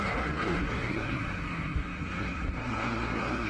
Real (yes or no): no